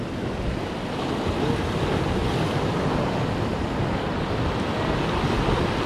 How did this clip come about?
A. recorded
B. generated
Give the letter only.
A